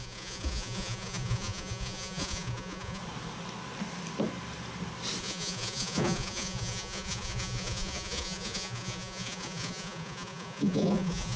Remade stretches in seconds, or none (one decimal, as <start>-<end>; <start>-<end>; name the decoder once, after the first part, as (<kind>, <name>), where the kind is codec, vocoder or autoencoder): 0.0-3.0 (vocoder, Vocos); 5.2-11.4